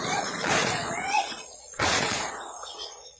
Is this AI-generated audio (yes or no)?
yes